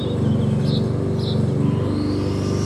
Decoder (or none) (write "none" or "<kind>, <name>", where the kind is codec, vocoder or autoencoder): none